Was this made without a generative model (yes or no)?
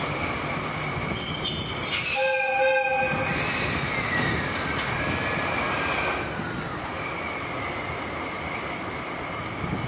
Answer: yes